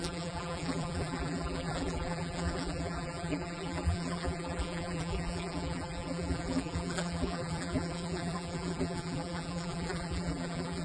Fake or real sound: fake